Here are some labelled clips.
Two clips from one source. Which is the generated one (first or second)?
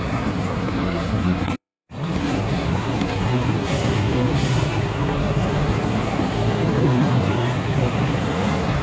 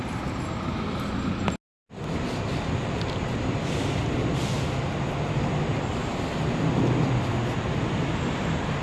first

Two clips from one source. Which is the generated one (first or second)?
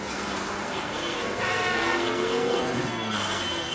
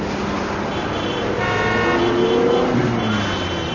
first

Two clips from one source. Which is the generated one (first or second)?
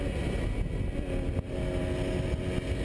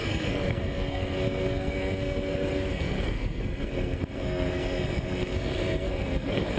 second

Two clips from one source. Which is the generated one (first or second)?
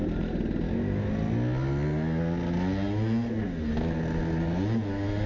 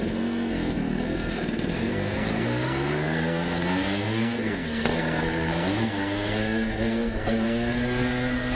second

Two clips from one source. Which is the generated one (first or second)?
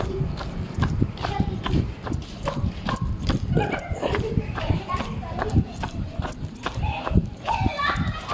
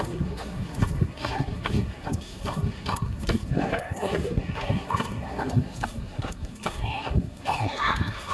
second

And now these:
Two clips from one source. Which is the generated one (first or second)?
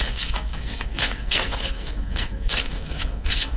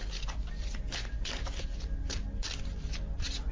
first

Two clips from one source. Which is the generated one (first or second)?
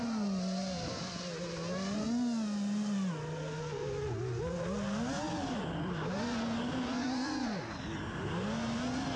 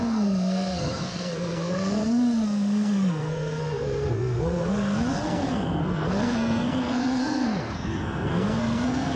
second